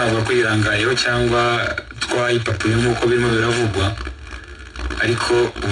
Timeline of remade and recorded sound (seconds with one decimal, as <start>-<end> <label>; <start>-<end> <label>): 0.0-1.7 recorded; 1.7-2.5 remade; 2.5-3.3 recorded; 3.3-3.8 remade; 3.8-5.7 recorded